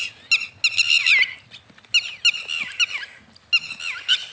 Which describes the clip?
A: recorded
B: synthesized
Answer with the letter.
A